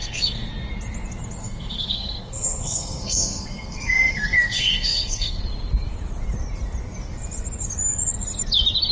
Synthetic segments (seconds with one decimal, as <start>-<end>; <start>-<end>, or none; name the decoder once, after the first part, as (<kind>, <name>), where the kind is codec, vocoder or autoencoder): 0.0-0.5 (codec, SNAC); 1.4-5.4